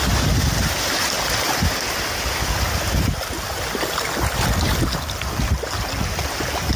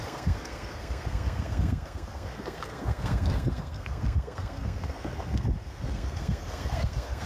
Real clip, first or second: first